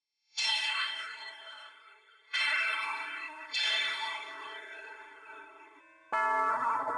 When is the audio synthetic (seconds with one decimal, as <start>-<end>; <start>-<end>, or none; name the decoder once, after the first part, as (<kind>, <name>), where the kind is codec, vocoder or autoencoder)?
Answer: 0.0-5.8 (codec, SNAC); 6.5-7.0